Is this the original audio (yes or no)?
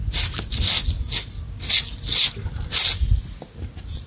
yes